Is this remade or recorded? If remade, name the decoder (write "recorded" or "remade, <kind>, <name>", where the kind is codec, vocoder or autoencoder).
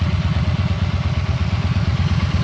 remade, vocoder, Vocos